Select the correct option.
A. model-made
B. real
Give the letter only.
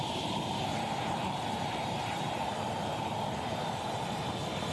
A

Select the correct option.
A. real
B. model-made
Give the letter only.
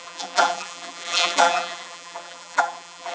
B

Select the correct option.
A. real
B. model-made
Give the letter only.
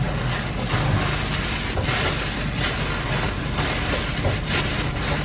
A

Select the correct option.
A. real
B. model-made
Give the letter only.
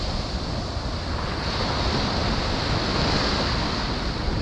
A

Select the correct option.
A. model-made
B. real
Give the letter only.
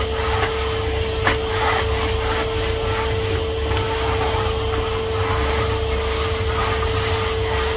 B